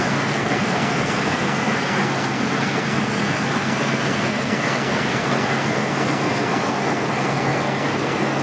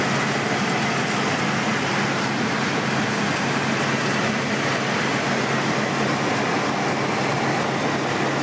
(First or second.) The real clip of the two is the second